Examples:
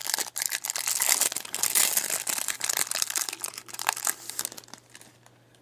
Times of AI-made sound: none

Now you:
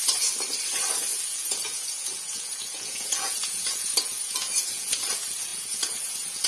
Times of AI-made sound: 1.1-5.0 (vocoder, Vocos); 5.5-6.5

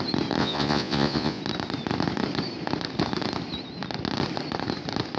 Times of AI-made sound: 0.4-1.4 (vocoder, Vocos)

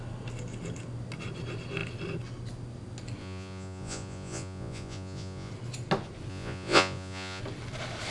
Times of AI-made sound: 3.2-5.5 (vocoder, Vocos); 6.3-7.4

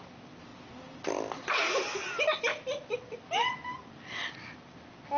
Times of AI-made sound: none

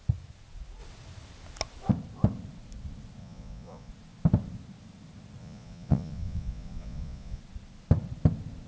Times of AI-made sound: 3.2-3.9 (vocoder, Vocos); 5.4-7.4